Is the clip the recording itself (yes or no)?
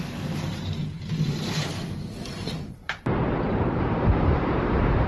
no